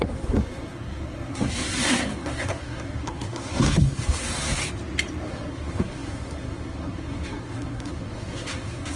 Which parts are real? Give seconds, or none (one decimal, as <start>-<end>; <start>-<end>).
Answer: 4.6-5.3